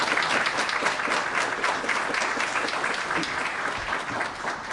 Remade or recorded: recorded